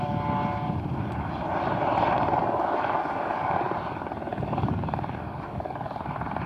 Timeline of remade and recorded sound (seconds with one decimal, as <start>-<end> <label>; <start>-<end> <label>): 0.0-2.4 recorded; 2.4-3.6 remade; 3.6-4.3 recorded; 4.3-6.0 remade; 6.0-6.5 recorded